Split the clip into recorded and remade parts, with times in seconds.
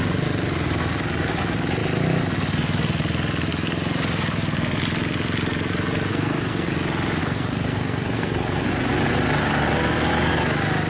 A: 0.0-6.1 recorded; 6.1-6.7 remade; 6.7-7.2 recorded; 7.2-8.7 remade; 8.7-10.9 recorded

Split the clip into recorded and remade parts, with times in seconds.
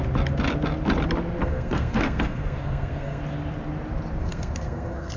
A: 0.0-1.4 recorded; 1.4-3.2 remade; 3.2-4.2 recorded; 4.2-5.2 remade